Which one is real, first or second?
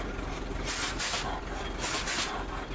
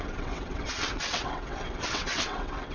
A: first